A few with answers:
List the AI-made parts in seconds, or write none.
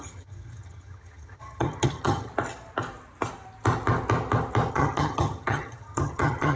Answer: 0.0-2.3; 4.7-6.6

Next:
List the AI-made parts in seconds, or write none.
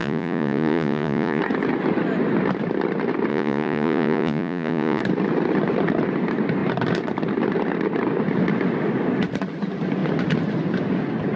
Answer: 0.0-1.4; 3.3-5.0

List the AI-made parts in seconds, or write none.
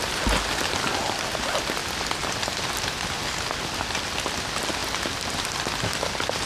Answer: none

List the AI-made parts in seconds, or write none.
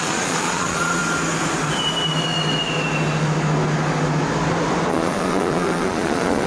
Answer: 0.0-1.0; 4.9-6.5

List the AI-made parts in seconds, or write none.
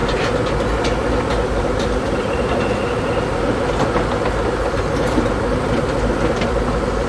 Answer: none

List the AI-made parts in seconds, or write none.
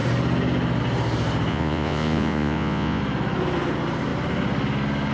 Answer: 1.5-3.0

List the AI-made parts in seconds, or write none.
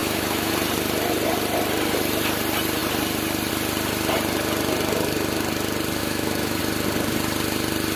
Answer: 0.0-0.5; 6.0-6.6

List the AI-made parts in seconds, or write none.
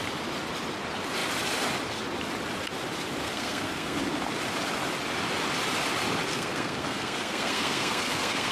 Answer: 3.2-4.0; 6.3-8.5